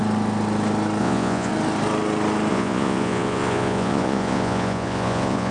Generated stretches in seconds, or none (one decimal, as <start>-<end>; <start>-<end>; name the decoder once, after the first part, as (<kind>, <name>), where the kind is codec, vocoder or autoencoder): 1.0-1.5 (vocoder, Vocos); 2.5-5.5